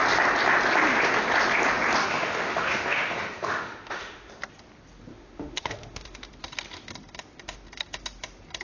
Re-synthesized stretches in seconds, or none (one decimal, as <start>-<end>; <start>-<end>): 2.0-4.3; 5.1-6.3